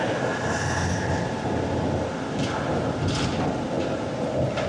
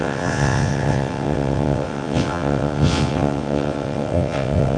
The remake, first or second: second